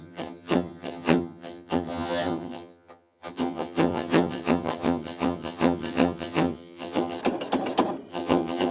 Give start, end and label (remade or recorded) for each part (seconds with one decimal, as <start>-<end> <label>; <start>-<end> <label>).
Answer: 0.0-7.2 remade; 7.2-8.1 recorded; 8.1-8.7 remade